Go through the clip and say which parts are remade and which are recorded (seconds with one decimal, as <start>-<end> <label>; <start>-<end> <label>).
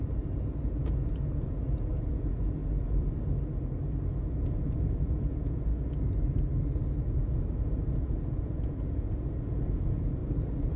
0.0-2.6 remade; 2.6-4.4 recorded; 4.4-5.7 remade; 5.7-7.0 recorded; 7.0-10.2 remade; 10.2-10.8 recorded